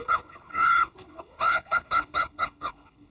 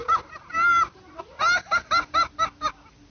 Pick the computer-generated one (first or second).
first